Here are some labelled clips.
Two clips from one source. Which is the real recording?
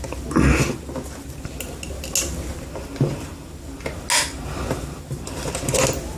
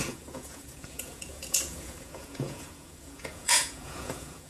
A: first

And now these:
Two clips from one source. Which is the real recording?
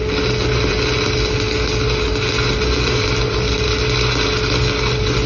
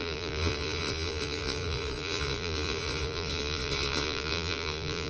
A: first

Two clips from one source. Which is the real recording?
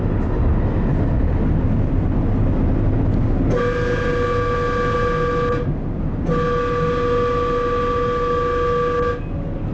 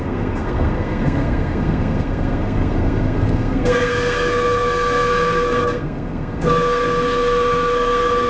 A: first